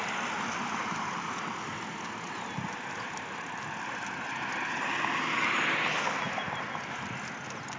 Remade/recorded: recorded